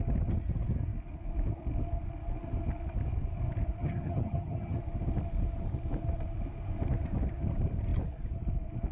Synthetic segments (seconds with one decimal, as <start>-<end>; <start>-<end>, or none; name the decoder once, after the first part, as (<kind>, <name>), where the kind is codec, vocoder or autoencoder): 3.8-4.8 (vocoder, HiFi-GAN)